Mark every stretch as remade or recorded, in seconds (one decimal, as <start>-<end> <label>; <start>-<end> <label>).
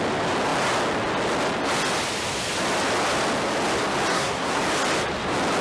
0.0-4.1 recorded; 4.1-4.6 remade; 4.6-5.6 recorded